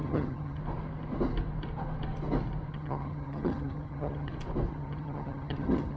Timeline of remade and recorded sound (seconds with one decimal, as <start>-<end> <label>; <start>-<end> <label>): 0.0-0.6 remade; 0.6-2.7 recorded; 2.7-4.3 remade; 4.3-4.7 recorded; 4.7-6.0 remade